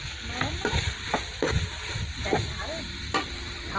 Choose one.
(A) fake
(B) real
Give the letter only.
B